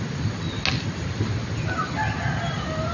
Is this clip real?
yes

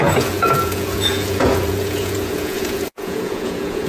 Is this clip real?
no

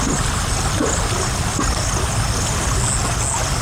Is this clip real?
yes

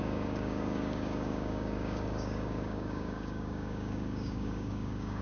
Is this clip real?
no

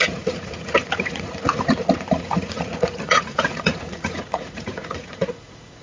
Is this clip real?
no